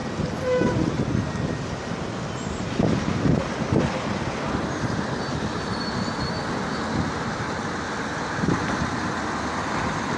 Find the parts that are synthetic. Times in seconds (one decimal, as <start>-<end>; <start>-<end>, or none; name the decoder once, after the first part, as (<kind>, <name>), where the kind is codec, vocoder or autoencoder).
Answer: 0.0-1.0 (vocoder, BigVGAN v2)

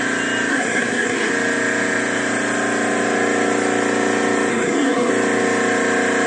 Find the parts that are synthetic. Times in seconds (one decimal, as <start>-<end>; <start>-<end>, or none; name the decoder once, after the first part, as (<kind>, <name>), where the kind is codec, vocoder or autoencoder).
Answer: 0.5-1.3 (codec, SNAC); 4.5-5.1

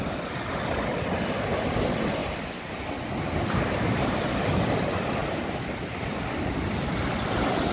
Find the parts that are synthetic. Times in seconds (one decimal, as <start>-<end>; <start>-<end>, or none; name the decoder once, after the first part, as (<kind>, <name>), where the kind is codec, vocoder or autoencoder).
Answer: none

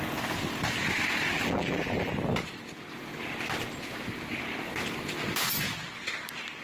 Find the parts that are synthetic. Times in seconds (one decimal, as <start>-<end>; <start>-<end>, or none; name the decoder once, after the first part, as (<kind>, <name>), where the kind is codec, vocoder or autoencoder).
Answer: 1.3-2.1 (vocoder, BigVGAN v2)